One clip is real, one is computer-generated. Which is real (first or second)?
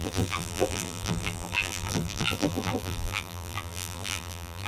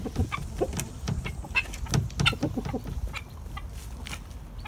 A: second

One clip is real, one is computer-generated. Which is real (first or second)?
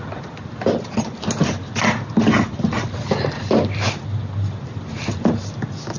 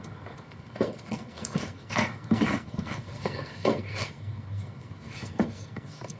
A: first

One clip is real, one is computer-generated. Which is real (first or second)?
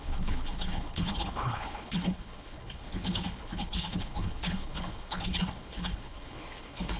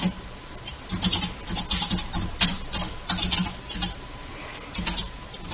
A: second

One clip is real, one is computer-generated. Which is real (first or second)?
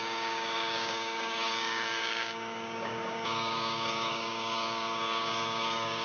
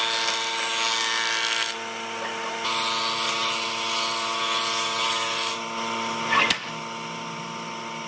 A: second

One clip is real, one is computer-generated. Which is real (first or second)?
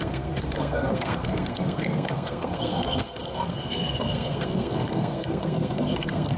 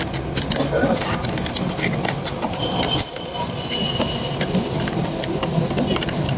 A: second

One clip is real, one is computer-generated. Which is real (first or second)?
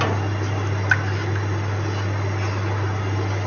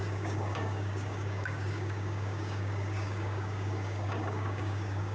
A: first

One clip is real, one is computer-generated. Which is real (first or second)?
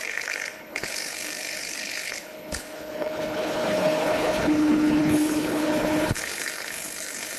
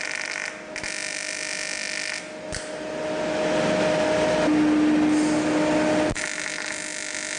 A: second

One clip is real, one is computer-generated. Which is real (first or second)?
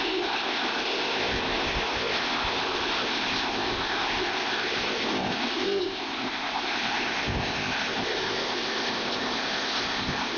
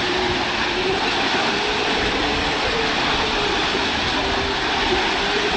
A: second